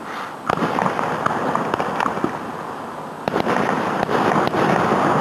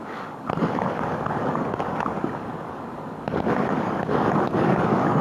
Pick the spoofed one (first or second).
second